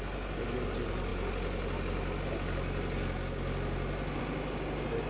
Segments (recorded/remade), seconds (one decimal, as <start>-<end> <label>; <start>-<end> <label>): 0.0-5.1 recorded